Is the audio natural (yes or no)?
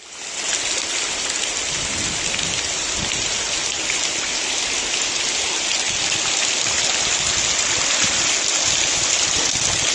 yes